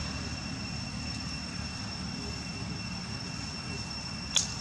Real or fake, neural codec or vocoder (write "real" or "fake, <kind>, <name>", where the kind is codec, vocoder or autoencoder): real